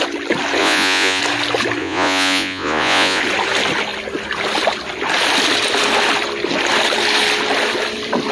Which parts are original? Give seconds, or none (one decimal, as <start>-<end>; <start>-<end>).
0.0-0.6; 1.2-1.8; 3.2-8.3